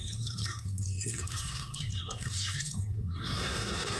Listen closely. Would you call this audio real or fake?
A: fake